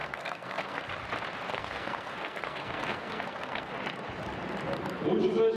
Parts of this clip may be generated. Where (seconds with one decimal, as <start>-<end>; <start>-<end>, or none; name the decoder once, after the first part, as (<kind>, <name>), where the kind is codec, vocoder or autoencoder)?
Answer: 0.0-0.9 (codec, SNAC); 1.5-3.7